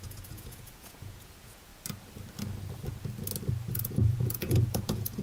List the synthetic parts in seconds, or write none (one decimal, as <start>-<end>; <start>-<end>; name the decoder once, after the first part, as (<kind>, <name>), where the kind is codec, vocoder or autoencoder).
0.0-1.7 (vocoder, Vocos); 3.7-5.2